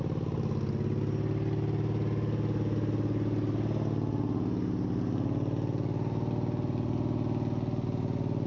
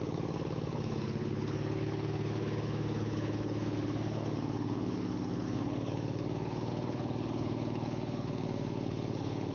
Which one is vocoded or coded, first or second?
second